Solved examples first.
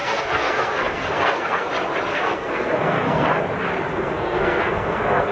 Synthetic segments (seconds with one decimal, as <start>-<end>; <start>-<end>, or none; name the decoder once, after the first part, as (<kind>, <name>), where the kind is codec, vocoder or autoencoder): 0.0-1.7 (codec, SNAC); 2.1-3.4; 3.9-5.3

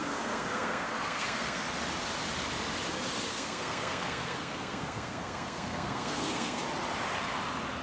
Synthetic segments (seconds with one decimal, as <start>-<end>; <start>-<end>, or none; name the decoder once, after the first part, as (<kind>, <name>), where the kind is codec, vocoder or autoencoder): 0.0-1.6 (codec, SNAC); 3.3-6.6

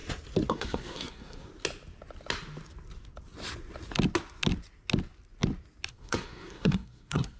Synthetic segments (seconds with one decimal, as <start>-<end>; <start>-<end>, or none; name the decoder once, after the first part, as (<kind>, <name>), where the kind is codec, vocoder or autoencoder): 0.5-1.5 (codec, SNAC); 5.9-7.4

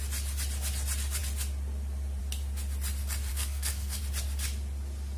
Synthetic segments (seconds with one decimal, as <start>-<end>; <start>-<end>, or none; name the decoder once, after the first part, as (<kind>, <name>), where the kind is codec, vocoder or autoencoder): 3.3-4.0 (codec, SNAC)

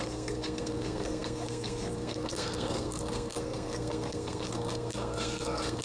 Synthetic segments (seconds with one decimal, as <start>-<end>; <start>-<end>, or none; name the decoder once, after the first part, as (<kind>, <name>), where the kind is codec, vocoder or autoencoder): 0.0-5.8 (codec, SNAC)